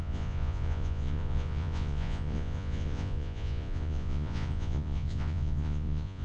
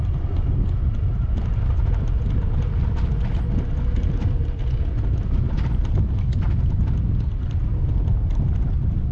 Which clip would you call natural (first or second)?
second